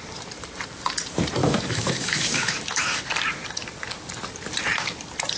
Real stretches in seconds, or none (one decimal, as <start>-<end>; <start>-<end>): 0.0-1.4; 3.0-5.4